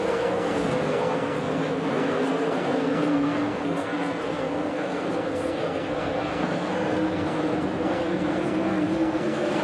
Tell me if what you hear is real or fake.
fake